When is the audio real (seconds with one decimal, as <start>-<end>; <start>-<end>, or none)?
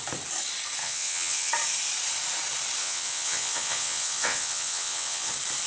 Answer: 0.0-0.8; 1.5-2.8; 5.3-5.7